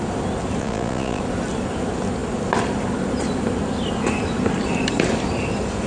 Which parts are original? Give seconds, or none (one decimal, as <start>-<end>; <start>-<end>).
0.0-0.6; 1.2-5.9